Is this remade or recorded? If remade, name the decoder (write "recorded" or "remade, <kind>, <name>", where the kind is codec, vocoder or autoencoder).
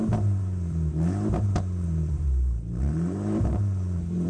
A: remade, vocoder, BigVGAN v2